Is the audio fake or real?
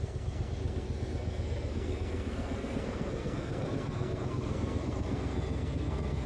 fake